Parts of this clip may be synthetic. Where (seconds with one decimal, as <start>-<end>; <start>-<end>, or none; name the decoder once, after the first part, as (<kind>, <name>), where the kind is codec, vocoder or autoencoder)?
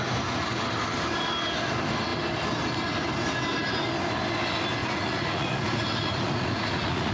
4.8-7.1 (vocoder, Vocos)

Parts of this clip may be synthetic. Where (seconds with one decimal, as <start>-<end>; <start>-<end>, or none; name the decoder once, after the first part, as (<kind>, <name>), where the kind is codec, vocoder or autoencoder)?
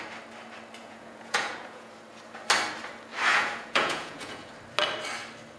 0.8-1.9 (vocoder, Vocos); 3.3-4.5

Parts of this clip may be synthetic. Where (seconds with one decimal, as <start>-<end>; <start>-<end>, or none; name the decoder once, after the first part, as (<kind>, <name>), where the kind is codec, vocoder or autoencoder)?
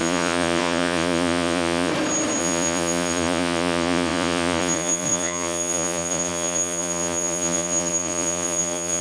0.0-1.9 (vocoder, Vocos); 2.4-9.0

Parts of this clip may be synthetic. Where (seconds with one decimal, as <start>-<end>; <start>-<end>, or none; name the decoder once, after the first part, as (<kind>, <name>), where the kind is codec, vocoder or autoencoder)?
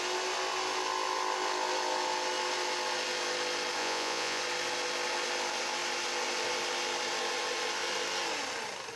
3.8-4.4 (vocoder, Vocos)